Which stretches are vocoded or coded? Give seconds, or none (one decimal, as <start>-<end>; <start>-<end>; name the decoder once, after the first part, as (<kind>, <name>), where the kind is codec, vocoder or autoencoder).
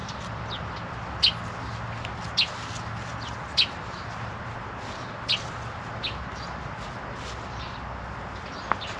none